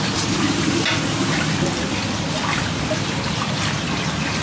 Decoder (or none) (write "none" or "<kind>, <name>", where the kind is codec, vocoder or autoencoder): none